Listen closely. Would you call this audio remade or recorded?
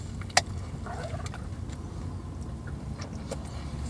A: recorded